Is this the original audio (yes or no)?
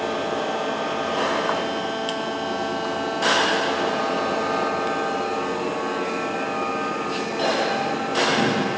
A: yes